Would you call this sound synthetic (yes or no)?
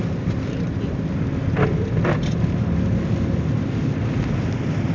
no